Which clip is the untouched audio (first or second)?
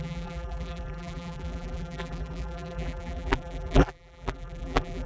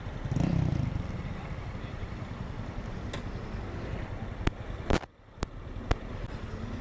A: second